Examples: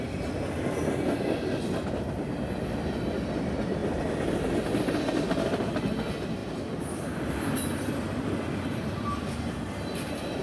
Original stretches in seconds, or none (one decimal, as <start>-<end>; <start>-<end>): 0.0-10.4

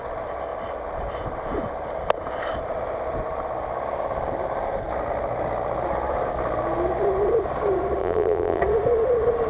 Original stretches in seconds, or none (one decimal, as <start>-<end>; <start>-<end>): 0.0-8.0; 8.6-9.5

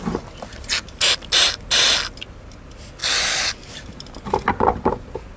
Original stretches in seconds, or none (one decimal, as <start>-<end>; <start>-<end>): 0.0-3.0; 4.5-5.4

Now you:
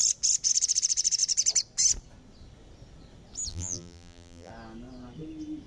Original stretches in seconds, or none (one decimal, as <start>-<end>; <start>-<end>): 0.0-3.5; 4.5-5.7

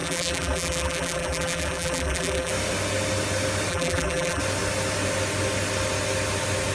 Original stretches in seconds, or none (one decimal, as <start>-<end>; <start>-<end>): 2.5-3.7; 4.4-6.7

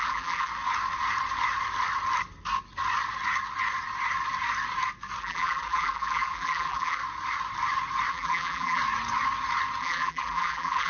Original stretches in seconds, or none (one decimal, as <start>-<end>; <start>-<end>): 0.5-5.2; 7.0-8.1; 8.8-9.8

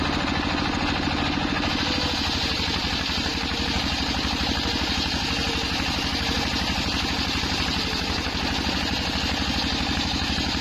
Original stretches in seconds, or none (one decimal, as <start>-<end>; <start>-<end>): 0.0-10.6